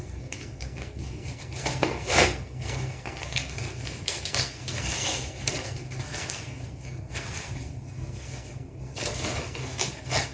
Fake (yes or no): yes